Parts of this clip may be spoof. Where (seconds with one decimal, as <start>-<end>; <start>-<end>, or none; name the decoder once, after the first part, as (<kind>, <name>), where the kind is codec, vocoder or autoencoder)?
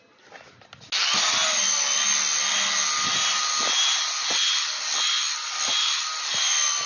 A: none